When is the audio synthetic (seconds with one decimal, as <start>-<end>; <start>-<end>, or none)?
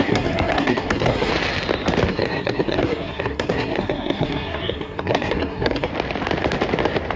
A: 0.0-1.3; 2.1-5.9